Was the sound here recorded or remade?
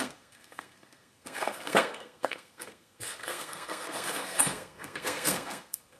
remade